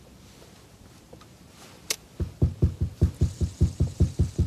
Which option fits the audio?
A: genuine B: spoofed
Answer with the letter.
A